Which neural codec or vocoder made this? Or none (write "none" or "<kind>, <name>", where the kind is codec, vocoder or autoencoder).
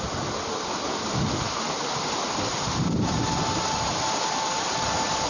none